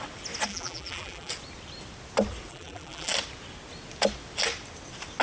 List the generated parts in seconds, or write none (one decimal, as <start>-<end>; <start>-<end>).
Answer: 0.5-1.3; 2.5-3.1